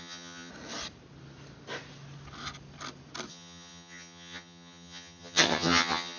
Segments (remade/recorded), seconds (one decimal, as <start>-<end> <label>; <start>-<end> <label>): 0.0-0.5 remade; 0.5-3.3 recorded; 3.3-6.2 remade